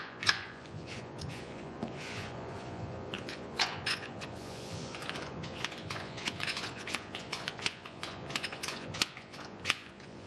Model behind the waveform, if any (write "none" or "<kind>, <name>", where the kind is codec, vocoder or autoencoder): vocoder, Vocos